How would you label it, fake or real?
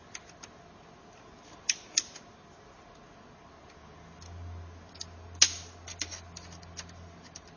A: real